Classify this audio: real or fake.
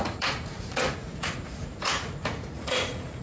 fake